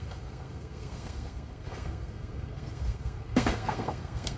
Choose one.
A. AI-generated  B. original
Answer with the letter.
A